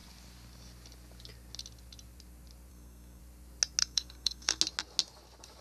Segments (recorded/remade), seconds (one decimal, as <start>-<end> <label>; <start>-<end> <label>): 0.0-2.7 recorded; 2.7-3.2 remade; 3.2-3.8 recorded; 3.8-4.6 remade; 4.6-5.6 recorded